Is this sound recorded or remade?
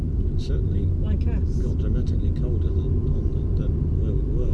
recorded